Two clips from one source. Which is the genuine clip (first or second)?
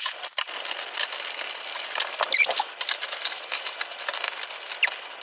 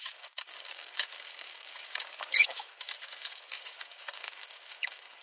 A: first